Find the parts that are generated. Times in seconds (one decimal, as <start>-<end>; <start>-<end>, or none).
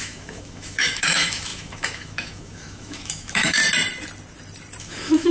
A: 0.0-3.6; 4.8-5.3